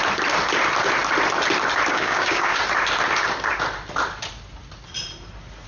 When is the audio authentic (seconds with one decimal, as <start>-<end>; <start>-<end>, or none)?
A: 0.0-1.9; 2.6-5.7